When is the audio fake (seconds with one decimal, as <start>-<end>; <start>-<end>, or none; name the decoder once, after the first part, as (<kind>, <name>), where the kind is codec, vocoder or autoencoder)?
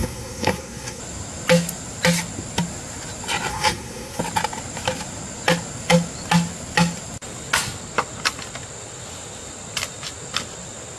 0.0-1.0 (codec, SNAC); 3.5-4.2